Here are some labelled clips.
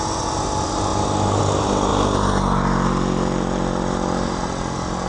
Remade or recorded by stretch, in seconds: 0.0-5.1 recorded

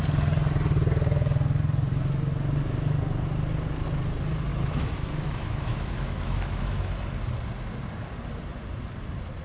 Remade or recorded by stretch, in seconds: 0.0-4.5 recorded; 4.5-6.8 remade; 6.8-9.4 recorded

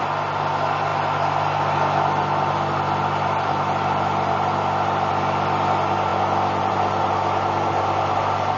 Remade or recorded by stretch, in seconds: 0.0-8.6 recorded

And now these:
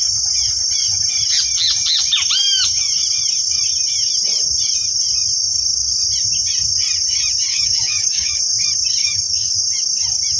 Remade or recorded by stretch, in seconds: 0.0-7.5 recorded; 7.5-8.4 remade; 8.4-9.0 recorded; 9.0-9.6 remade; 9.6-10.4 recorded

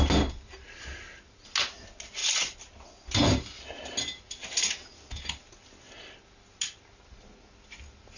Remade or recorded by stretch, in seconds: 0.0-8.2 recorded